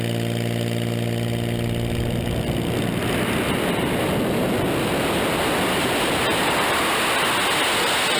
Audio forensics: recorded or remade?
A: recorded